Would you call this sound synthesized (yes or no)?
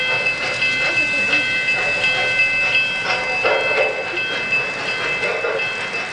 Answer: no